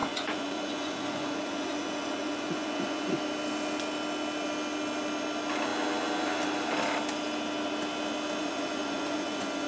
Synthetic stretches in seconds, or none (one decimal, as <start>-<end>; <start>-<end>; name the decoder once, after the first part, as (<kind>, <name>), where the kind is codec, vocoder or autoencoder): 0.0-3.2 (vocoder, Vocos); 8.4-9.7